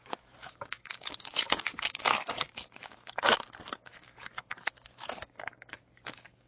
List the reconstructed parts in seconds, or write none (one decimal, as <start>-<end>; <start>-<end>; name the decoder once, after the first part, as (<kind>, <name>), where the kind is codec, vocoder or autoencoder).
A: 0.0-6.5 (codec, DAC)